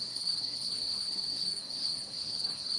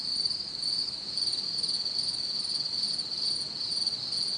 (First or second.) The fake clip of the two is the first